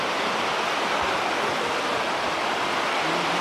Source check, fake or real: real